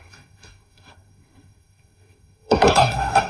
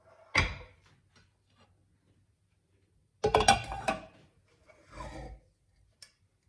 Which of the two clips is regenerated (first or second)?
first